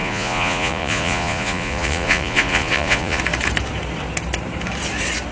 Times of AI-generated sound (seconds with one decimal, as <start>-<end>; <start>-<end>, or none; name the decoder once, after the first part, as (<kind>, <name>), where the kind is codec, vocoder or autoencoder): 0.0-3.2 (vocoder, Vocos)